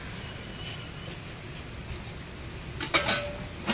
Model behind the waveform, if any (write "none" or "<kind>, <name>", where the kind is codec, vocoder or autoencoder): none